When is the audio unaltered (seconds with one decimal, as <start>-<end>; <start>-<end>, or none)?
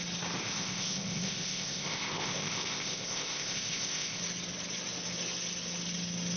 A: 0.0-0.4; 4.2-6.4